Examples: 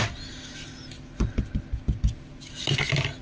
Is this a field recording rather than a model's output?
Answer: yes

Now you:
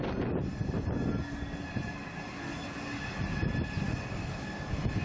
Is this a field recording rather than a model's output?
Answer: yes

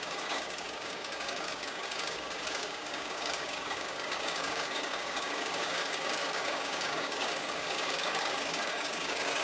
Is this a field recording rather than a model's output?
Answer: no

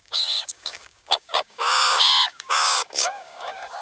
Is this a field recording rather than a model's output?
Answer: no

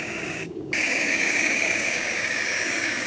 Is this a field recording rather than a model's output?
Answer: no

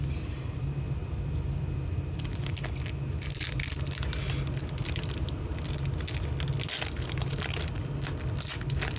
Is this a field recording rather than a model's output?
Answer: yes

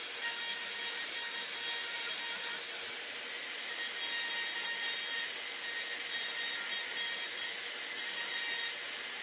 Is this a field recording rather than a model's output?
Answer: yes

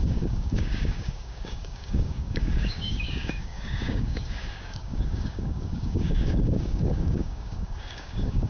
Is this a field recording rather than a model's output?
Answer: no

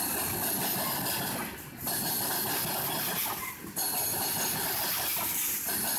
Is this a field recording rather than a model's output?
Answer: yes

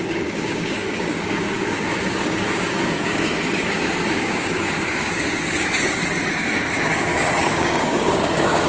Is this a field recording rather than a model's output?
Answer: no